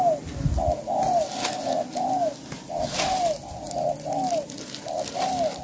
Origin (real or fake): real